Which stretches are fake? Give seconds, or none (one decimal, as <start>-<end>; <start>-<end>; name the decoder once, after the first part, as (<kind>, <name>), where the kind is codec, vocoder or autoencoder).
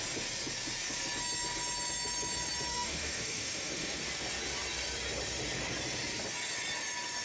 2.7-4.0 (autoencoder, DAC-VAE)